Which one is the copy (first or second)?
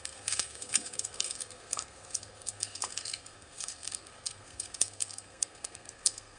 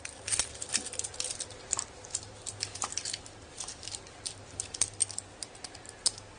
first